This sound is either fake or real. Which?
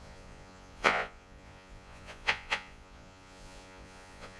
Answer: fake